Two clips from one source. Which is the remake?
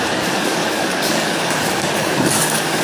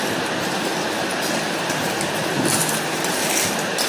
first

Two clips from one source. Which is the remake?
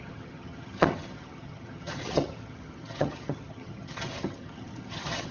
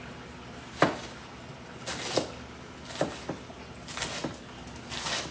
first